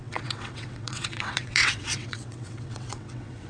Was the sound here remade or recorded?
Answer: remade